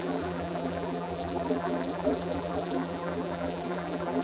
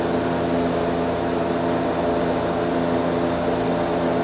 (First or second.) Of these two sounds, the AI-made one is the first